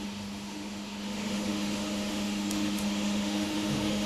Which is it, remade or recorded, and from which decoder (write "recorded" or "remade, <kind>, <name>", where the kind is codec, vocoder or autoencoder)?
remade, autoencoder, DAC-VAE